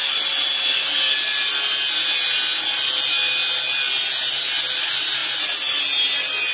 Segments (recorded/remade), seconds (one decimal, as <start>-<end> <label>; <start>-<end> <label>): 0.0-6.5 recorded